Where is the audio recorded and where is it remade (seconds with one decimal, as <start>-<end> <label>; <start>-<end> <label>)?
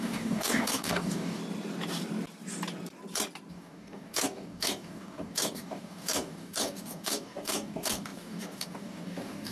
0.0-1.4 remade; 1.4-3.5 recorded; 3.5-9.5 remade